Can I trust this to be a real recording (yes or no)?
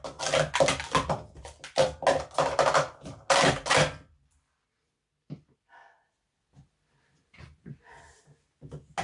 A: yes